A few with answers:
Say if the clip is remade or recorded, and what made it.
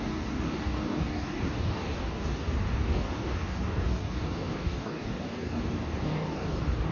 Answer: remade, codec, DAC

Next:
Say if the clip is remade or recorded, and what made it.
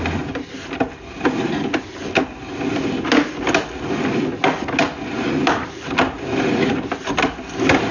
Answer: recorded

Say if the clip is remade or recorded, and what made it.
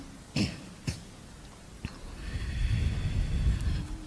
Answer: recorded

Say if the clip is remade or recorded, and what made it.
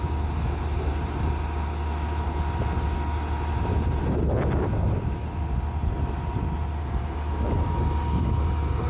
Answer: recorded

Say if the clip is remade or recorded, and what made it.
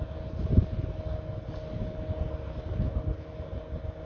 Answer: recorded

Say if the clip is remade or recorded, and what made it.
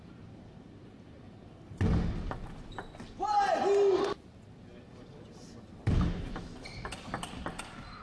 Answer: recorded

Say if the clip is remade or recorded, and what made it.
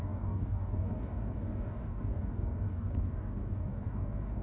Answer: remade, codec, DAC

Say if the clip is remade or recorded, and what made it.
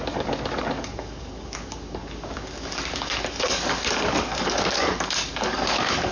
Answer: remade, codec, DAC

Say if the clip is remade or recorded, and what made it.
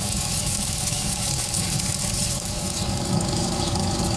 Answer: remade, codec, DAC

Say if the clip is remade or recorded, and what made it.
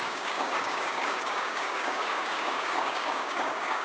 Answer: remade, codec, DAC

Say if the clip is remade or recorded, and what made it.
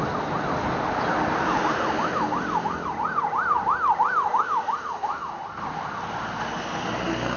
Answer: recorded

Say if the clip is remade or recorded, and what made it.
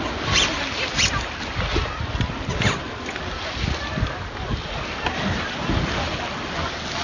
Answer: recorded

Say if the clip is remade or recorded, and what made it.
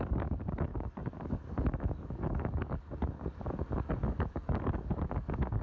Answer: remade, codec, DAC